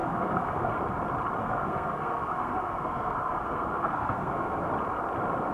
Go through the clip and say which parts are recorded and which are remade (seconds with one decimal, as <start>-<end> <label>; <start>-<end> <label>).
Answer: 0.0-0.8 remade; 0.8-1.4 recorded; 1.4-4.7 remade; 4.7-5.5 recorded